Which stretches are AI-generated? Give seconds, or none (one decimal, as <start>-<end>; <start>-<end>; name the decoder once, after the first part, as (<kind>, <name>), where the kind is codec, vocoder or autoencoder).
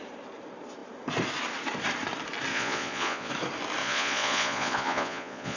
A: 2.5-3.3 (vocoder, Vocos); 3.8-5.6